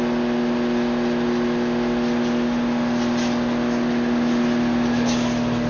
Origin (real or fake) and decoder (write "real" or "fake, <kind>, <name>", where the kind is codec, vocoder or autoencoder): real